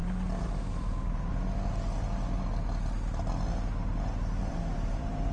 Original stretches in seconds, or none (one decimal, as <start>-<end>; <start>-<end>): 0.0-0.7; 1.3-4.5